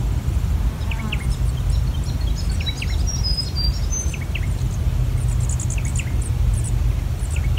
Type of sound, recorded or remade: recorded